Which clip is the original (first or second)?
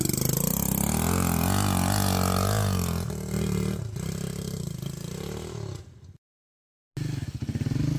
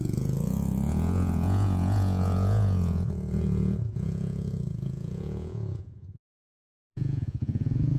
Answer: first